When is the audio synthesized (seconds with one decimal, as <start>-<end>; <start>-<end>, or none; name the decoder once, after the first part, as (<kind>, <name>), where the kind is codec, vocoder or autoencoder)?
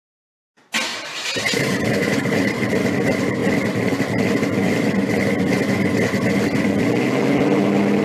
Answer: 0.9-2.9 (vocoder, BigVGAN v2)